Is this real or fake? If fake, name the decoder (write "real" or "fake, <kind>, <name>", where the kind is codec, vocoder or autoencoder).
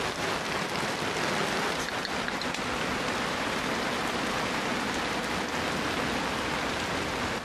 real